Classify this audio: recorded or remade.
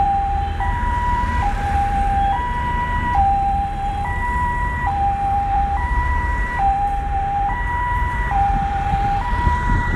remade